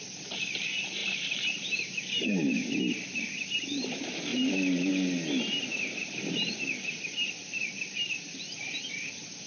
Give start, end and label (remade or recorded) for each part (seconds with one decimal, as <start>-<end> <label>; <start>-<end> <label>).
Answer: 0.0-1.0 recorded; 1.0-2.8 remade; 2.8-4.3 recorded; 4.3-4.9 remade; 4.9-6.0 recorded; 6.0-6.6 remade; 6.6-7.4 recorded; 7.4-8.9 remade; 8.9-9.5 recorded

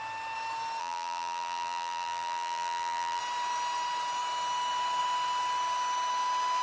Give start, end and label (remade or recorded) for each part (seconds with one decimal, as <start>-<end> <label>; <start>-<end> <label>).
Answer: 0.0-0.8 recorded; 0.8-3.2 remade; 3.2-6.6 recorded